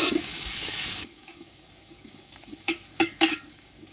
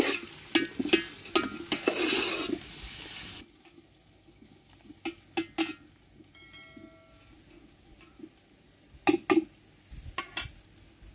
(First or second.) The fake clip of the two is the first